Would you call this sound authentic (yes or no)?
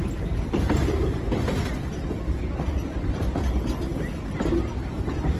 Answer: no